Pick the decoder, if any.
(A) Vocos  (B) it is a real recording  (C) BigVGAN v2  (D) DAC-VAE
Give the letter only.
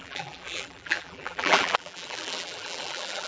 C